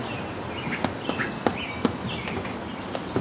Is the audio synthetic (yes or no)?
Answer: no